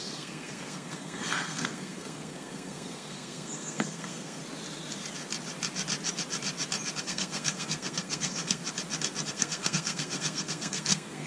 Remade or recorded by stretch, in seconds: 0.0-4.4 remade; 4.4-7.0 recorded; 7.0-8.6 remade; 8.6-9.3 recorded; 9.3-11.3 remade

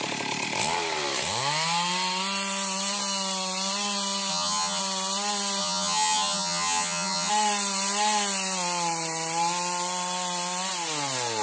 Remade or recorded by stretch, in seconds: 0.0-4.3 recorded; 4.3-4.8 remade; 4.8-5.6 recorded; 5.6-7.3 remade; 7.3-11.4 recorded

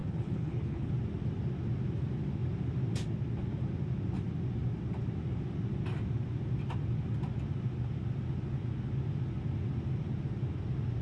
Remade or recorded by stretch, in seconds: 0.0-0.9 remade; 0.9-11.0 recorded